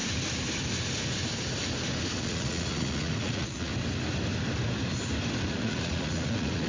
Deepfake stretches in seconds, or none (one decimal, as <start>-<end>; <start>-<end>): 2.2-3.7; 5.5-6.7